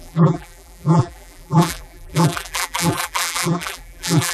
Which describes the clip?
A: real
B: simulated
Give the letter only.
B